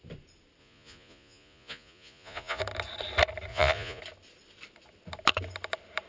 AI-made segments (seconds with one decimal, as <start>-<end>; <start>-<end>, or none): 0.6-2.6; 3.5-4.0